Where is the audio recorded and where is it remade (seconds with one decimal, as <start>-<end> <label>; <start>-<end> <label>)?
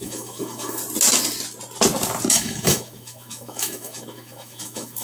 0.0-0.8 remade; 0.8-2.3 recorded; 2.3-5.0 remade